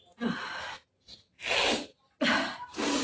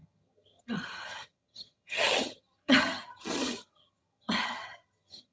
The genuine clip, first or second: first